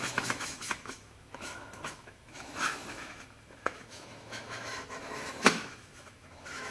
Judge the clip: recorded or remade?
remade